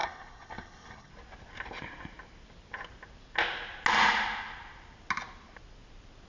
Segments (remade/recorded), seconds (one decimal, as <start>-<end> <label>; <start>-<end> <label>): 0.0-1.1 remade; 1.1-6.3 recorded